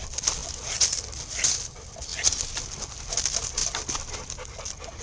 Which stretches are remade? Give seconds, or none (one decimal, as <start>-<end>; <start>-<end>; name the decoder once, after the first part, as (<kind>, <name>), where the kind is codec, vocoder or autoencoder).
none